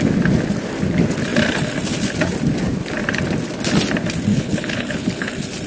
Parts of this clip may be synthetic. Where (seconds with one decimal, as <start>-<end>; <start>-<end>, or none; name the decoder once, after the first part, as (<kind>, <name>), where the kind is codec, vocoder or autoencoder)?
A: 4.3-5.3 (codec, HILCodec)